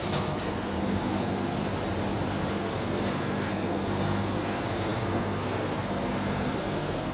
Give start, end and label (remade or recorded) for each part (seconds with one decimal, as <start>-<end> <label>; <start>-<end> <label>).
0.0-1.6 remade; 1.6-2.5 recorded; 2.5-7.1 remade